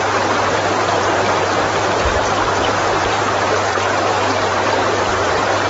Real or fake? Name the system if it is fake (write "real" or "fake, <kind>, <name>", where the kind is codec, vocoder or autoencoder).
fake, vocoder, BigVGAN v2